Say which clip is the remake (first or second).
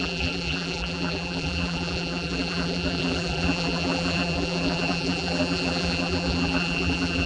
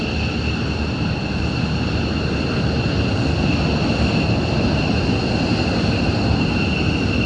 first